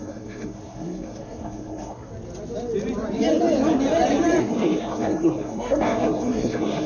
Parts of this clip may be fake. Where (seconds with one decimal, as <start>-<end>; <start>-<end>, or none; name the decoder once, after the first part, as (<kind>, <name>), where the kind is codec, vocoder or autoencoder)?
0.0-2.1 (codec, SNAC); 4.4-6.9